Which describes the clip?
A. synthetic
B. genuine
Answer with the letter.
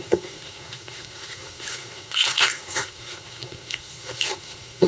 A